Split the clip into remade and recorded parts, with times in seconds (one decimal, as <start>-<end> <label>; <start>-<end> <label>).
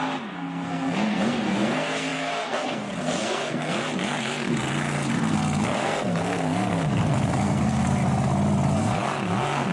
0.0-8.0 remade; 8.0-8.7 recorded; 8.7-9.7 remade